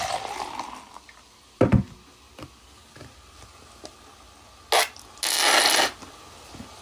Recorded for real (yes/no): yes